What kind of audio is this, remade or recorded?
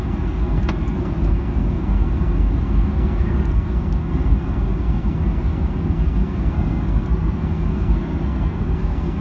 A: remade